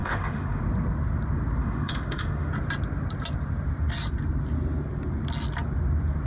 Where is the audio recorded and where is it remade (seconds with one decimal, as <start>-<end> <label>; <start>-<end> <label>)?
0.0-0.6 remade; 0.6-1.6 recorded; 1.6-2.5 remade; 2.5-6.3 recorded